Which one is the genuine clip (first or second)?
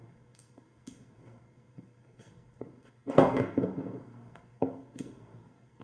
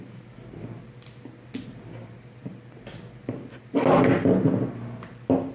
second